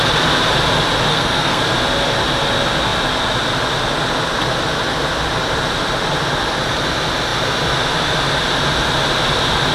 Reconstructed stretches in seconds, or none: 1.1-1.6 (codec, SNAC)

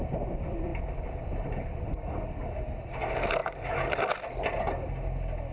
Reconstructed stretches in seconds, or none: none